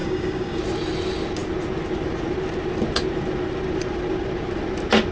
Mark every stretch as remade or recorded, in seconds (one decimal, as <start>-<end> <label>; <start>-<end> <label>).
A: 0.0-0.6 remade; 0.6-5.1 recorded